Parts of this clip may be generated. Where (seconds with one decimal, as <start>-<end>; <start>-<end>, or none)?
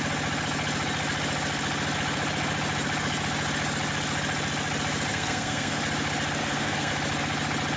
5.1-5.8; 6.4-6.9